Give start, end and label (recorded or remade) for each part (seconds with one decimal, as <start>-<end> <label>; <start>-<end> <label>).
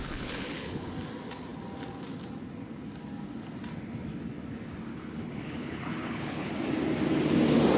0.0-0.9 remade; 0.9-4.9 recorded; 4.9-6.5 remade; 6.5-7.8 recorded